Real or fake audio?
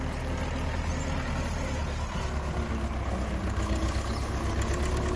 real